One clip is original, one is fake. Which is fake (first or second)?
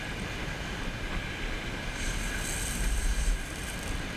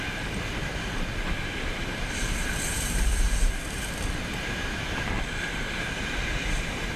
second